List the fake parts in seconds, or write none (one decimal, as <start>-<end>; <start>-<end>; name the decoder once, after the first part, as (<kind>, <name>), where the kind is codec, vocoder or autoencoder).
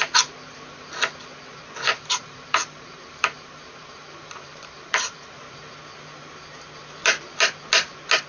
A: 1.9-5.3 (vocoder, BigVGAN v2)